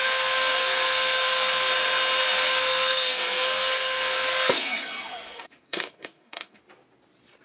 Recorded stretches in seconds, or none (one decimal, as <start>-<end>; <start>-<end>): 1.7-2.2; 6.6-7.4